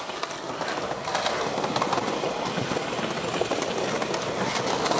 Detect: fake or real real